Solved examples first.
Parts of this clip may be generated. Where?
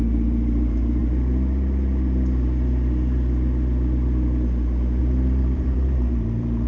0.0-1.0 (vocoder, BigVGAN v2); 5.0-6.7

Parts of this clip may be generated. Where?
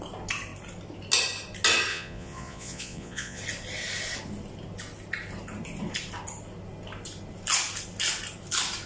1.9-3.4 (vocoder, Vocos)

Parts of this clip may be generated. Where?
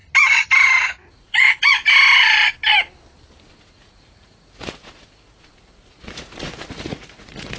0.9-1.8 (vocoder, Vocos); 3.5-7.6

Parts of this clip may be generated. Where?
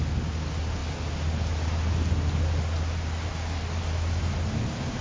none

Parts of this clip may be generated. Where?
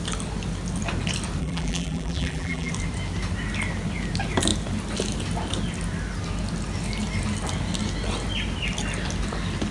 1.4-2.7 (vocoder, BigVGAN v2)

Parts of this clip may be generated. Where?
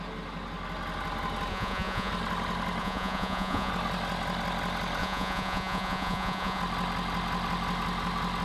1.5-2.1 (vocoder, Vocos); 2.8-3.7; 5.0-6.6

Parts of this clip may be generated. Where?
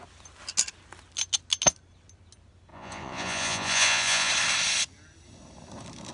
2.7-4.3 (vocoder, Vocos)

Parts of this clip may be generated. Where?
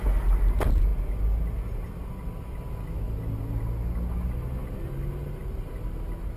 none